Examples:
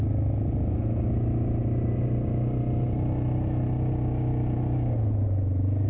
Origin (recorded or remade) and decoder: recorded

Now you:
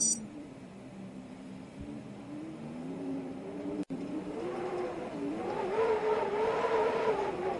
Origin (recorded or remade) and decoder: remade, vocoder, BigVGAN v2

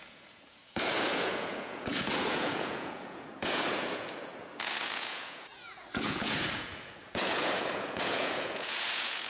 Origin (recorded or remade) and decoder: remade, vocoder, Vocos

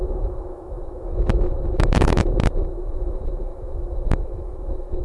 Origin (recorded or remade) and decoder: remade, autoencoder, DAC-VAE